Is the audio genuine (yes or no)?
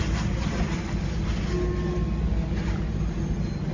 yes